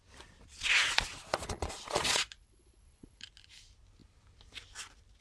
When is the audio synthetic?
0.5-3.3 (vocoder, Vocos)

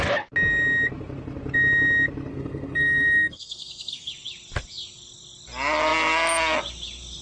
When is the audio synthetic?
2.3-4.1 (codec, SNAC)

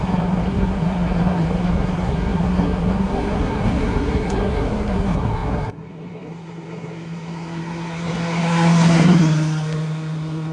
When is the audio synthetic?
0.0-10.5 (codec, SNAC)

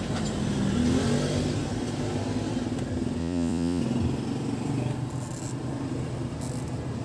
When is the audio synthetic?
3.2-3.8 (vocoder, Vocos)

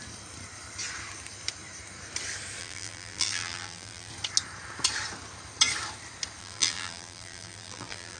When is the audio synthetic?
2.6-4.1 (vocoder, BigVGAN v2); 6.4-8.2

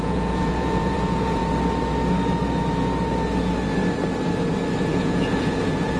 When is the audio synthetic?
0.0-1.4 (vocoder, Vocos); 4.8-6.0

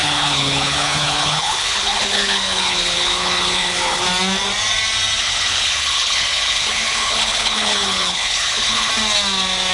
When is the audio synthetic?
0.0-4.0 (codec, HILCodec); 5.2-8.9

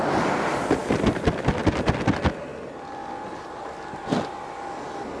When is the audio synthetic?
none